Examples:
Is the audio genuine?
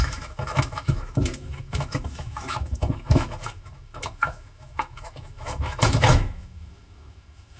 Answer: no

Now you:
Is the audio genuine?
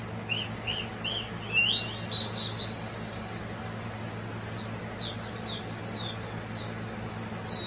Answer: yes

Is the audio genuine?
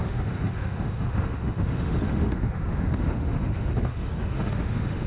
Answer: no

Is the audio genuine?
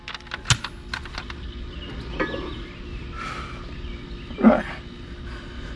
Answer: yes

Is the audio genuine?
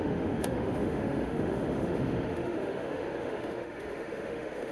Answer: no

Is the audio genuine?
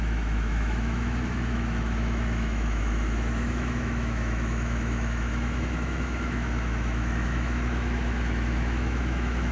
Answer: no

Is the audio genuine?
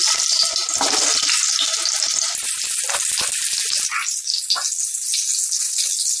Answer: yes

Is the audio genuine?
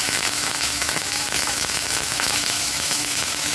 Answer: no